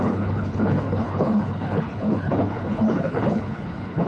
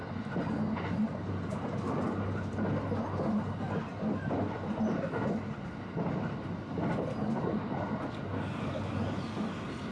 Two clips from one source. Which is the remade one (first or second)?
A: first